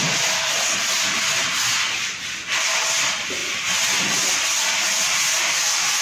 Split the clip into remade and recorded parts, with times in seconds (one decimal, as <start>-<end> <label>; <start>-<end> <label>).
0.0-6.0 recorded